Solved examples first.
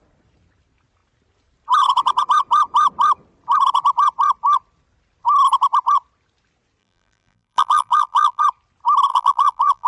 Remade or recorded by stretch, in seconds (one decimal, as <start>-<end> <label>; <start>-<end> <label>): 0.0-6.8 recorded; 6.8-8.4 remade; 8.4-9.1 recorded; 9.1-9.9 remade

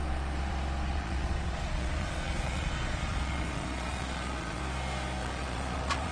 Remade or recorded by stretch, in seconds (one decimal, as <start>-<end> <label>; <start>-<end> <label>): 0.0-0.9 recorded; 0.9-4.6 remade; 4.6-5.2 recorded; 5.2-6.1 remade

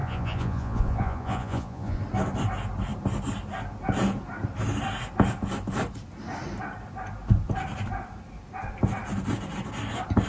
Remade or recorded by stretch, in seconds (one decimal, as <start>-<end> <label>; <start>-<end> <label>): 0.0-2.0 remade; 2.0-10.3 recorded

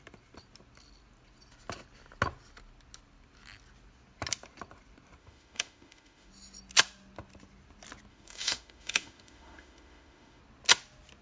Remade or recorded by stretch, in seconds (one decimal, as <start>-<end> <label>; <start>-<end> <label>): 0.0-5.2 recorded; 5.2-6.3 remade; 6.3-8.1 recorded; 8.1-10.4 remade; 10.4-11.2 recorded